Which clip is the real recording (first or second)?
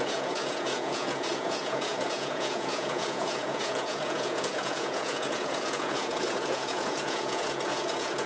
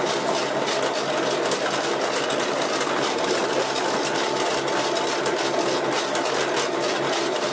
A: second